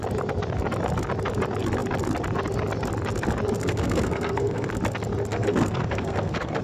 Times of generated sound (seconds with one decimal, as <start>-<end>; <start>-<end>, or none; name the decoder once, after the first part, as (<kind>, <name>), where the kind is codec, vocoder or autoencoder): 3.6-4.7 (codec, SNAC); 5.3-6.6